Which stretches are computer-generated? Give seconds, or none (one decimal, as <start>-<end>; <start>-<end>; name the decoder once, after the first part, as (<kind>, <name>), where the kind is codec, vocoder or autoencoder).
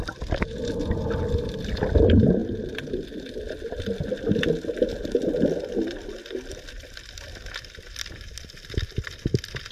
none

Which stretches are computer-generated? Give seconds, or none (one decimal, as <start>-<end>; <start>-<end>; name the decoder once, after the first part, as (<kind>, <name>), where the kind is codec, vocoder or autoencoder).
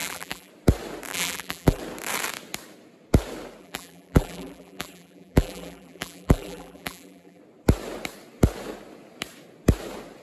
0.0-0.5 (vocoder, BigVGAN v2); 1.1-1.8; 3.6-7.4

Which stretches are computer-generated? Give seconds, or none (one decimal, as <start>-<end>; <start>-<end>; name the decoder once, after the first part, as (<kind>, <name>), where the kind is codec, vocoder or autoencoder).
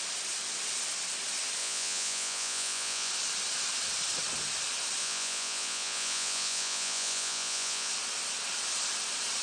1.6-3.1 (vocoder, Vocos); 5.0-7.9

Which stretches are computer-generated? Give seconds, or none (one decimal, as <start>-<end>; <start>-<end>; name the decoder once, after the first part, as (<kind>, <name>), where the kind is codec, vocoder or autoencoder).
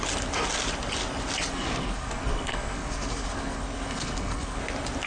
1.5-4.6 (codec, SNAC)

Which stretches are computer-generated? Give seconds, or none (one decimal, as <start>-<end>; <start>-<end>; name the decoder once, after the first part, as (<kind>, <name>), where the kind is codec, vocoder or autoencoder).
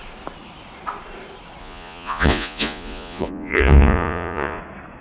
1.6-4.6 (vocoder, Vocos)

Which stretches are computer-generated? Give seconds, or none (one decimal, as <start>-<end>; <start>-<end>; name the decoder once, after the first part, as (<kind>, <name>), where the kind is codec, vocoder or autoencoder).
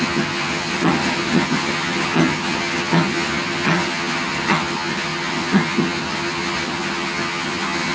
0.0-7.9 (vocoder, HiFi-GAN)